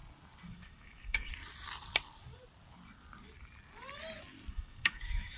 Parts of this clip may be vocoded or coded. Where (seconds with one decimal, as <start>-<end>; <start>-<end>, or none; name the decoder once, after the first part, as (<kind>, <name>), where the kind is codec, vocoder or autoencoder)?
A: 0.5-1.3 (autoencoder, DAC-VAE); 4.5-5.4